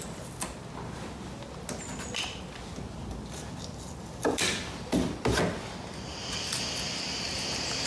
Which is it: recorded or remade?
recorded